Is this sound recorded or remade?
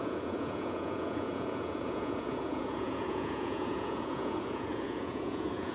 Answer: remade